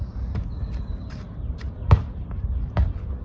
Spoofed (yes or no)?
no